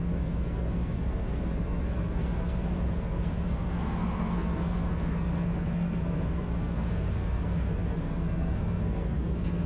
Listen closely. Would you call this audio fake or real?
fake